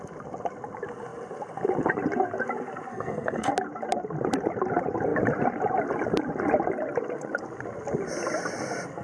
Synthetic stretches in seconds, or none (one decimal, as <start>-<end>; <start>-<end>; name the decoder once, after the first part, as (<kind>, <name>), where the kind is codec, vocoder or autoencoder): 2.9-3.5 (codec, SNAC)